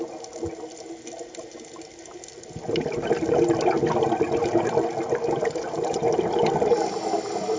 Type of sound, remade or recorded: recorded